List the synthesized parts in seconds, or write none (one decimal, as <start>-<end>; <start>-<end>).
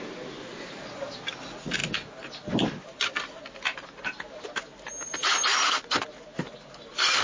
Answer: 0.5-1.1; 5.1-5.7